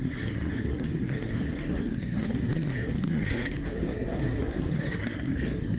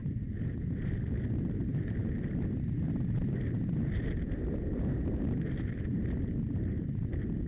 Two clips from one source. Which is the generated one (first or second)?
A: first